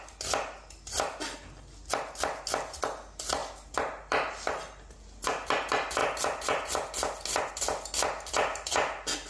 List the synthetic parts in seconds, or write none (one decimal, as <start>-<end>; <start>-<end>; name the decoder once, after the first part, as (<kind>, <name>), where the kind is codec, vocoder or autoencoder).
none